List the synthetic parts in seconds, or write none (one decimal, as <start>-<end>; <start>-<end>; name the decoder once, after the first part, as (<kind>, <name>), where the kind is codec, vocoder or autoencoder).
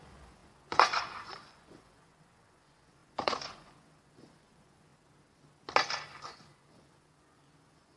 0.0-4.9 (vocoder, Vocos); 6.2-8.0